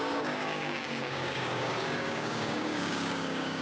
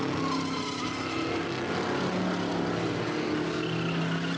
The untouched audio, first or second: second